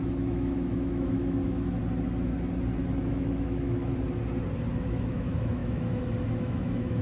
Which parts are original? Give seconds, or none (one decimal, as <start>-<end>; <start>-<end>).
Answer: 1.8-3.1; 3.9-4.7